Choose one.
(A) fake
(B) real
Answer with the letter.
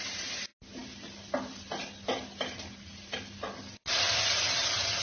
B